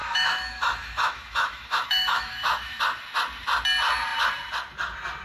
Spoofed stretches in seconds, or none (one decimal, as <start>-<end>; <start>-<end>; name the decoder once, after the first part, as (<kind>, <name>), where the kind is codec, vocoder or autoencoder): 0.0-2.8 (autoencoder, DAC-VAE)